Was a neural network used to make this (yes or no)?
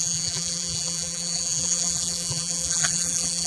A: yes